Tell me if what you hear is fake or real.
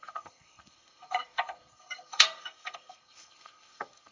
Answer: fake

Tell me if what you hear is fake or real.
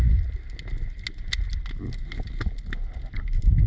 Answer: real